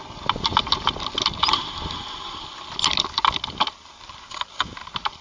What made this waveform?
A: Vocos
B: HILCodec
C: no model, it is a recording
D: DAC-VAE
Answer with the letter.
C